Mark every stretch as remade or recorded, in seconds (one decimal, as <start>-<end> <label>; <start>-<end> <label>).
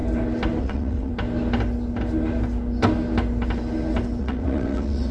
0.0-0.6 recorded; 0.6-1.1 remade; 1.1-4.2 recorded; 4.2-5.1 remade